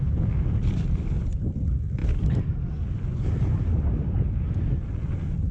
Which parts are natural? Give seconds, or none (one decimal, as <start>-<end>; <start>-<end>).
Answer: 0.0-5.5